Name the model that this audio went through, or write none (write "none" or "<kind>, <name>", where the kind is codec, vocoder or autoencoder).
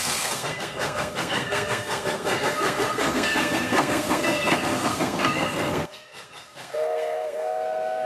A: codec, SNAC